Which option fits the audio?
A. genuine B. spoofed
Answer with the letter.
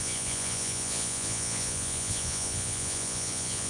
B